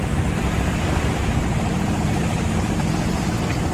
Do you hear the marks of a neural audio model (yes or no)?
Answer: no